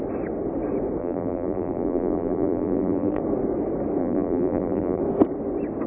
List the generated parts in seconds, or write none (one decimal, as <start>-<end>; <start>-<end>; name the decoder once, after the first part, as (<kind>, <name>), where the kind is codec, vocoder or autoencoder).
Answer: 1.0-3.2 (vocoder, BigVGAN v2); 4.0-5.0